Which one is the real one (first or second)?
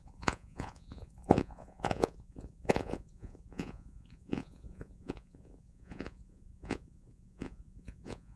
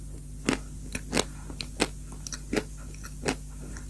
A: second